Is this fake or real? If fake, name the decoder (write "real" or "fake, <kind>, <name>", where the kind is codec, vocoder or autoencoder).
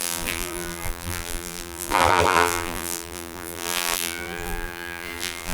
fake, vocoder, BigVGAN v2